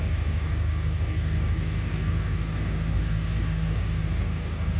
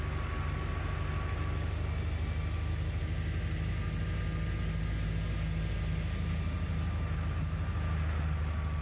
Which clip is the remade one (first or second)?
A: first